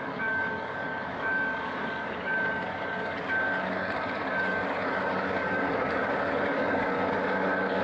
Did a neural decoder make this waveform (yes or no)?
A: yes